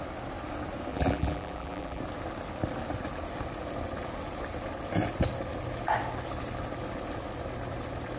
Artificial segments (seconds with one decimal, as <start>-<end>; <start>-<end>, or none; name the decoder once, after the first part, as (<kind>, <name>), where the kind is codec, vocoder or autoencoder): 0.9-2.0 (vocoder, BigVGAN v2)